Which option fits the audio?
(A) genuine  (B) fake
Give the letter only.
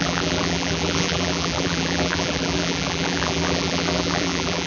B